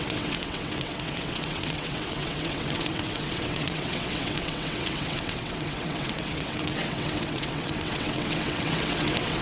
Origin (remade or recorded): remade